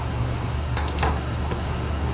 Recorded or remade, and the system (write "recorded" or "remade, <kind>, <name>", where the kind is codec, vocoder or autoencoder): remade, codec, SNAC